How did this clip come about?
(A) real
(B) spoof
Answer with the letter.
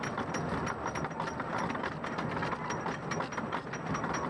A